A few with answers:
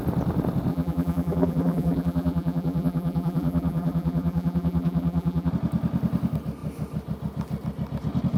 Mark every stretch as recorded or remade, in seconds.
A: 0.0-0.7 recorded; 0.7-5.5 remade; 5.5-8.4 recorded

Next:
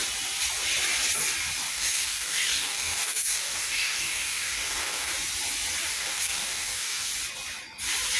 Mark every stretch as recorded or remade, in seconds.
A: 0.0-1.7 recorded; 1.7-5.1 remade; 5.1-5.9 recorded; 5.9-7.1 remade; 7.1-8.2 recorded

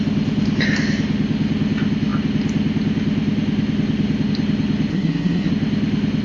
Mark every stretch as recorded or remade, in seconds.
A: 0.0-4.9 recorded; 4.9-5.5 remade; 5.5-6.2 recorded